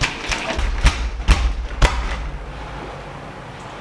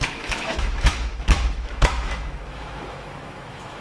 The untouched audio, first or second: first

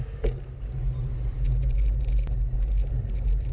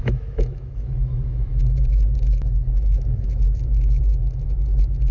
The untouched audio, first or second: first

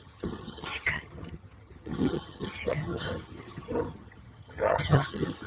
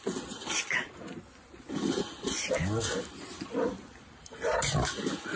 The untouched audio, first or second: second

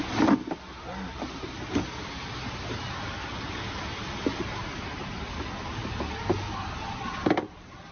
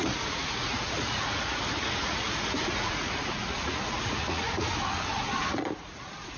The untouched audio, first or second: first